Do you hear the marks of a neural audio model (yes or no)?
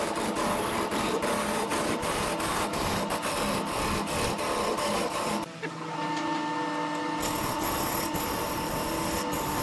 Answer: no